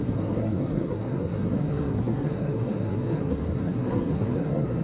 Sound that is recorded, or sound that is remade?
remade